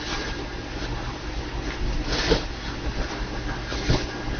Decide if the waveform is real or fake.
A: real